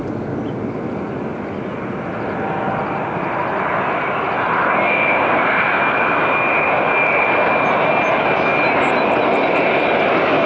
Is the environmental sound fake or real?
real